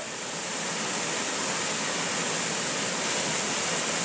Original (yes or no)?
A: yes